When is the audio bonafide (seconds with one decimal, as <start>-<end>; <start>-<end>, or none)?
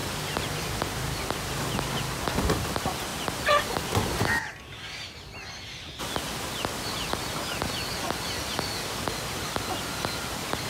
0.0-10.7